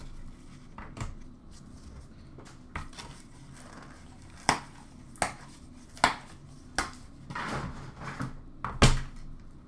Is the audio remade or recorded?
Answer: recorded